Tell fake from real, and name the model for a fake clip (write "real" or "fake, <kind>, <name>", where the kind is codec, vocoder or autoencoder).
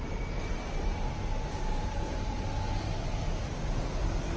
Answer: real